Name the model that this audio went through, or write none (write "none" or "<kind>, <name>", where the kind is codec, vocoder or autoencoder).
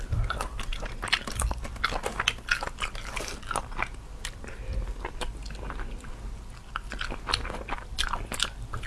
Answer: none